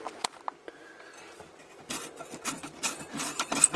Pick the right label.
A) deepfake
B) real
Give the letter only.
B